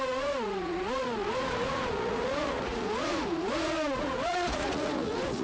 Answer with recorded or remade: remade